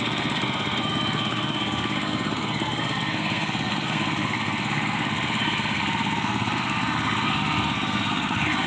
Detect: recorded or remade remade